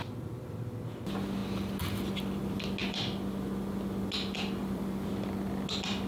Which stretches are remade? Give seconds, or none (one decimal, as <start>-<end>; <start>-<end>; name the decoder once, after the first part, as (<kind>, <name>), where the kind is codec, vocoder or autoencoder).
4.6-5.1 (vocoder, BigVGAN v2)